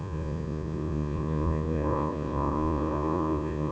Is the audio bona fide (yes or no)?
no